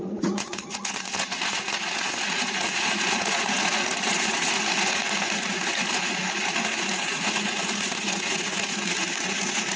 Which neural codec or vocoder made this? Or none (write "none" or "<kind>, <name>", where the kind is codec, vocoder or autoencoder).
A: vocoder, Vocos